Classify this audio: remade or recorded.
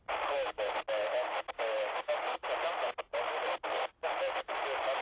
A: recorded